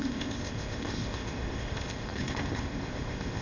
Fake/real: fake